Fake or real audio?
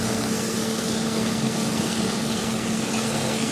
fake